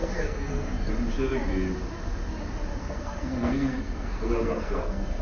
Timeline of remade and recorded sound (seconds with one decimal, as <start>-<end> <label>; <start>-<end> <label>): 0.0-0.9 remade; 0.9-2.8 recorded; 2.8-5.2 remade